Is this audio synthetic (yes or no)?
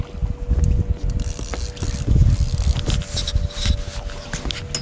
no